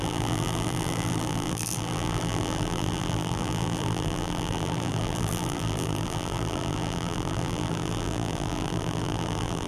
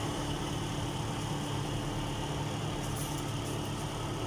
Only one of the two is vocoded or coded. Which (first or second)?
first